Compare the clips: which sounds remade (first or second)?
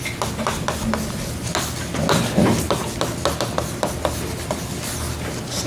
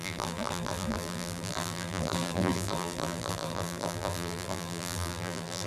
second